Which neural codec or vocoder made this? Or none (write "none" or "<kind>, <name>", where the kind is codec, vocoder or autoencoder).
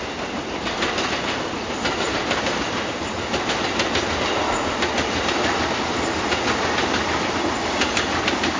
none